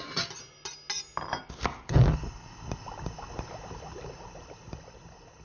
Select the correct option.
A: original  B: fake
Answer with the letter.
A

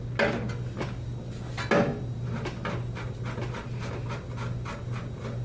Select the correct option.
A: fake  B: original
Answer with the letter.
B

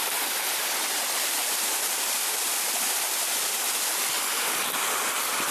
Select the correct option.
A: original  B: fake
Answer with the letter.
B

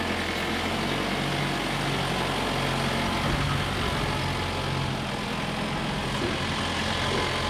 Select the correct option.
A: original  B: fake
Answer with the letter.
A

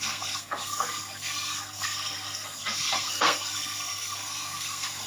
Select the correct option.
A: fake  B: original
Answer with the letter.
A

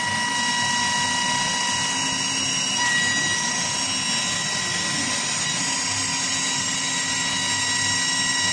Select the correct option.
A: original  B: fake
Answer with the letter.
A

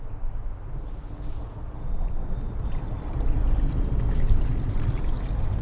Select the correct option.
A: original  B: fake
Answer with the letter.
A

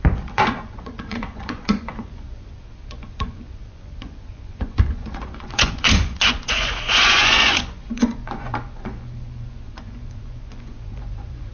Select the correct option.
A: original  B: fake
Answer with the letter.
B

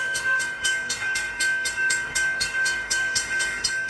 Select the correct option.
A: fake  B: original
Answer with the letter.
A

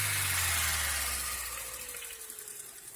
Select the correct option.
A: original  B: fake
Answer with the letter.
A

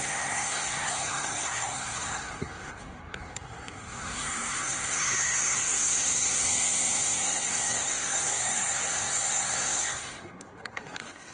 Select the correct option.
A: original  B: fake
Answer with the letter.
B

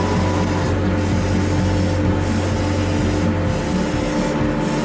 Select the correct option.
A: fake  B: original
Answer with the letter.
B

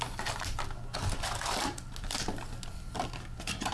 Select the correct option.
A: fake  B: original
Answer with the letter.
B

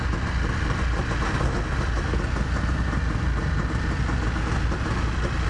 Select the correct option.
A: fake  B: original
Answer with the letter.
B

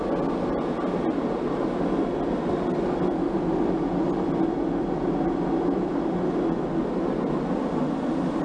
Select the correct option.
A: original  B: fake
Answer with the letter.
A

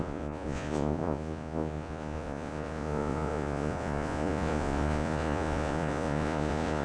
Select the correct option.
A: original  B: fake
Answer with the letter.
B